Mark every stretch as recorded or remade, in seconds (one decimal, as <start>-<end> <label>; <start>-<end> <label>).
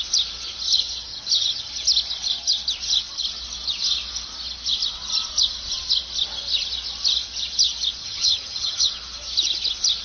0.0-1.1 recorded; 1.1-1.7 remade; 1.7-8.0 recorded; 8.0-8.9 remade; 8.9-10.0 recorded